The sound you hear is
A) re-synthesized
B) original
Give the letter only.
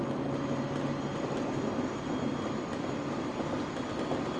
B